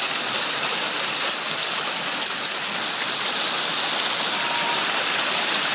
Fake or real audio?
real